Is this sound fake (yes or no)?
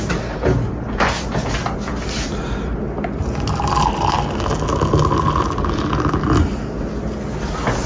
no